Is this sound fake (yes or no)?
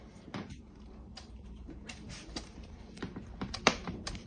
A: yes